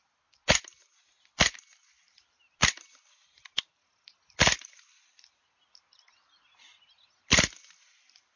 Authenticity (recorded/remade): recorded